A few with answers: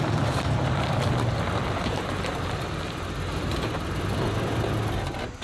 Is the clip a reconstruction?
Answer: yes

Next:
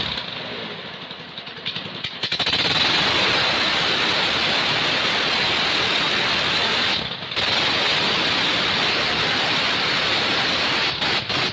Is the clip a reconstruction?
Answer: no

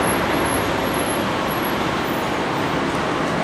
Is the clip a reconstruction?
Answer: no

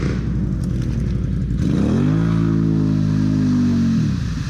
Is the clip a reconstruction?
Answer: no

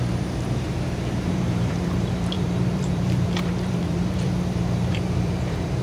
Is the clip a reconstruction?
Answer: yes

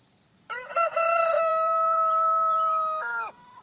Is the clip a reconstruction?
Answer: yes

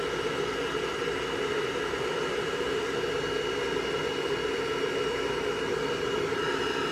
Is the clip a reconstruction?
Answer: no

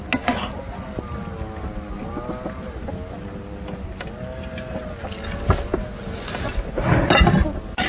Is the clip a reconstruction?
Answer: no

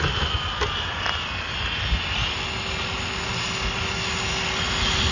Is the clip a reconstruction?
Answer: no